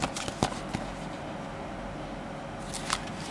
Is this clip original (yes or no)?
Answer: yes